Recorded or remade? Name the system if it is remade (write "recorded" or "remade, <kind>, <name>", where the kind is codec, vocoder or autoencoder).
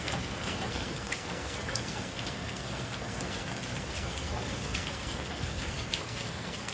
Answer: remade, codec, SNAC